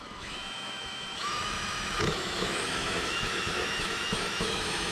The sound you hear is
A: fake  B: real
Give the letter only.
A